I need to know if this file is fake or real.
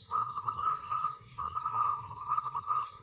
fake